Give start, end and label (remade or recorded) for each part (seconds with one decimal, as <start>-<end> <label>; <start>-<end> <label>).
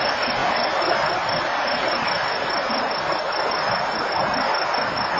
0.0-5.2 recorded